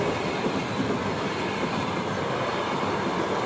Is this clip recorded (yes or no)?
yes